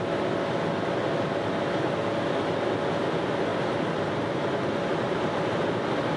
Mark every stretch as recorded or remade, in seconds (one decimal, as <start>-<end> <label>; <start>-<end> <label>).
0.0-6.2 recorded